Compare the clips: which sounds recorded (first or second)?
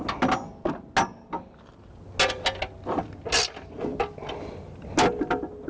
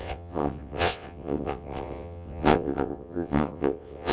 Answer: first